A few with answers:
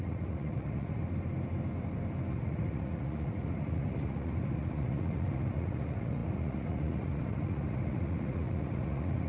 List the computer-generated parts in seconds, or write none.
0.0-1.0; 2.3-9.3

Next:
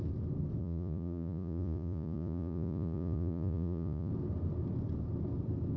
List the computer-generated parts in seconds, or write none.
0.6-4.1

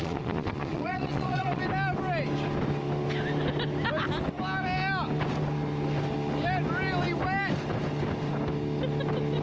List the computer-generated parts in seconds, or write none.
0.0-1.6

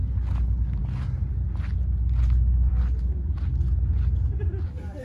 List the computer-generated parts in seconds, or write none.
none

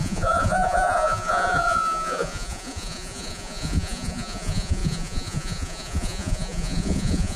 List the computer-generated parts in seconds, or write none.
0.0-7.4

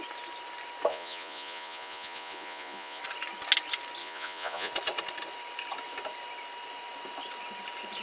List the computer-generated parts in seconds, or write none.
0.9-3.0; 4.0-4.7